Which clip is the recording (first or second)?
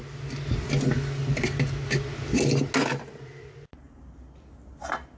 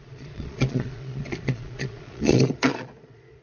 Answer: first